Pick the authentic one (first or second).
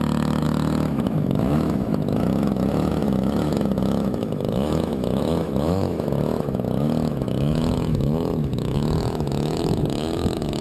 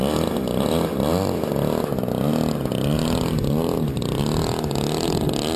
second